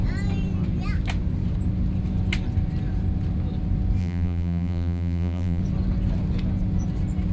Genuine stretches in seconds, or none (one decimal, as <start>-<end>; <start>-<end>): 0.0-4.0; 5.6-7.3

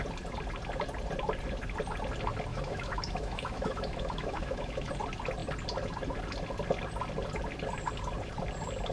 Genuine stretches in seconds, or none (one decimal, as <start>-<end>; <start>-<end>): 0.0-2.5; 4.9-8.9

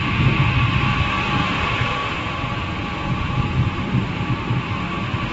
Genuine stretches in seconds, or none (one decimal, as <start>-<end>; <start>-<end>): 0.0-1.4; 3.8-5.3

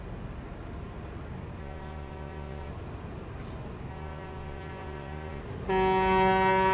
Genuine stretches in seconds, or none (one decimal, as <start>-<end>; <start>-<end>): 0.0-1.6; 2.7-3.9; 5.4-6.7

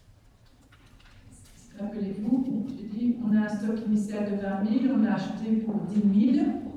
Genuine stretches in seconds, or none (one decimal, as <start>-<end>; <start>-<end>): 5.0-6.2